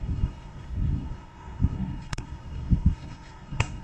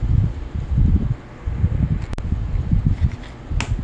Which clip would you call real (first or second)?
second